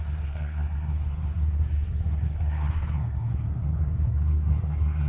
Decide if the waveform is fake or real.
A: fake